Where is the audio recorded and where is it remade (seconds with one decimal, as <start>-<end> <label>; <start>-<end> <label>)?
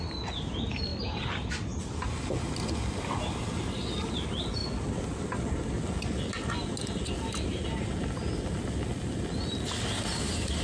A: 0.0-10.6 recorded